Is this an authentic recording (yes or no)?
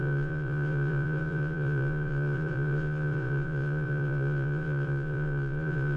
no